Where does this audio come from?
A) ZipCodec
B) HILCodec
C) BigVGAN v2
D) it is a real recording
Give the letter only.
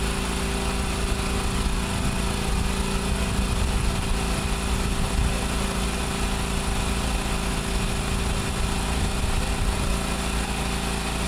D